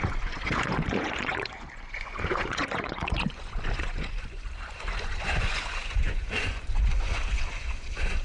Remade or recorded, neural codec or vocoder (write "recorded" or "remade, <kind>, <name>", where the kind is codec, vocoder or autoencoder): remade, vocoder, Vocos